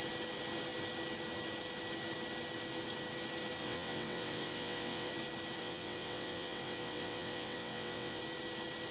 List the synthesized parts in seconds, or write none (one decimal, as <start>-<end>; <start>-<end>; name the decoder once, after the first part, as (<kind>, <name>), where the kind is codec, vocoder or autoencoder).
3.6-5.1 (vocoder, WaveNeXt); 5.6-8.2